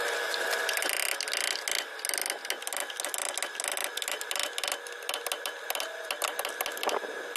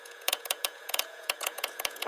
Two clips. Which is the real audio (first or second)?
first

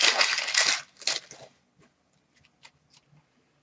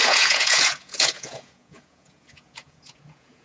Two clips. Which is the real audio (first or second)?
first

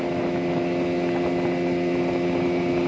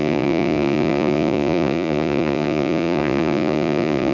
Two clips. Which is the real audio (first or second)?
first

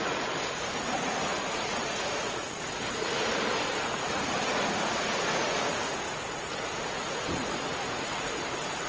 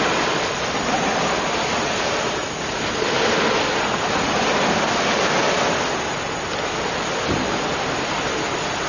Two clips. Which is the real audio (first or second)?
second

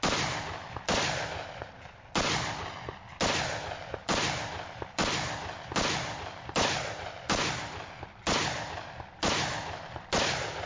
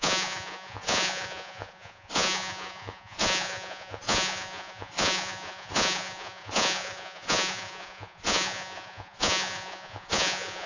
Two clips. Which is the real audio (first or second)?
first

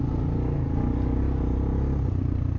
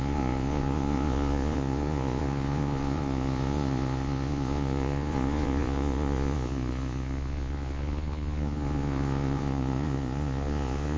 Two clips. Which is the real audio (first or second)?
first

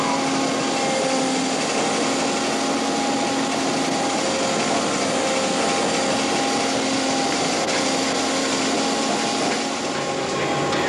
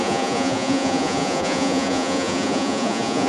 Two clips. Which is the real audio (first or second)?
first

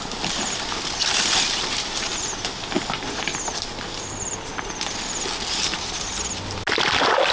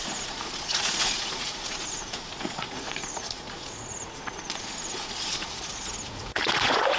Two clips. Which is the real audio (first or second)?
first